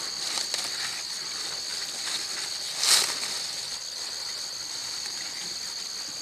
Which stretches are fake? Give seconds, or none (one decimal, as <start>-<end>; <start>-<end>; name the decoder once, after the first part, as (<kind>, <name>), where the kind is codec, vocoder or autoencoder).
4.8-5.5 (vocoder, BigVGAN v2)